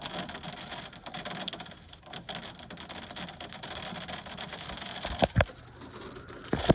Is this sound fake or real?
real